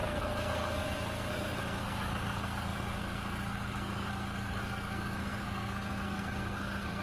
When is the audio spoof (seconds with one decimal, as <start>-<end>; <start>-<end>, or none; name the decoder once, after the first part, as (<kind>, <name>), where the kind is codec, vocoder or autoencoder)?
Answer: 0.0-7.0 (codec, SNAC)